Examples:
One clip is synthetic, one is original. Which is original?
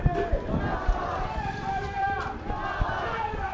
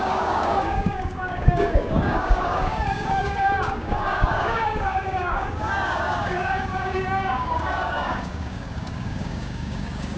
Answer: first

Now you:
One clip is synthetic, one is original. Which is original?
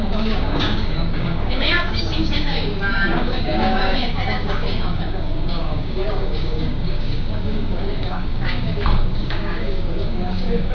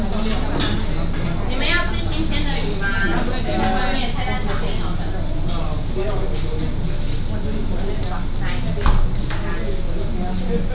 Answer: second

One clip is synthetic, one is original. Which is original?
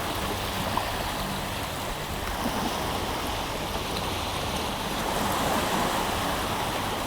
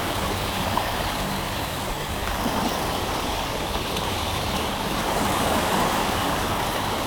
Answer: first